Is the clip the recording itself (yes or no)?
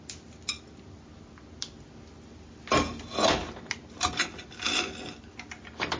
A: yes